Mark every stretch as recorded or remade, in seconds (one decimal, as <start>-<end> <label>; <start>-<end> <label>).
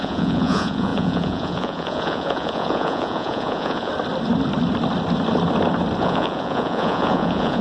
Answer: 0.0-3.9 remade; 3.9-6.0 recorded; 6.0-7.6 remade